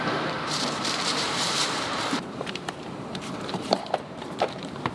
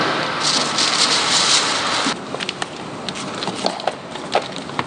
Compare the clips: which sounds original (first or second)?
second